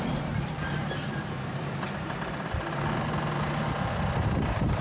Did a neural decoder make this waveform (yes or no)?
no